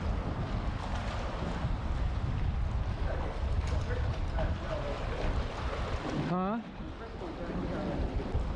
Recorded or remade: recorded